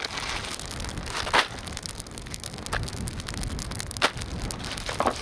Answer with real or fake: real